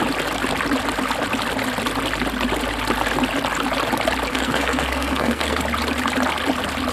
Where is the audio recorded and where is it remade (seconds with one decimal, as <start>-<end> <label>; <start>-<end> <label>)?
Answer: 0.0-4.3 recorded; 4.3-5.6 remade; 5.6-6.9 recorded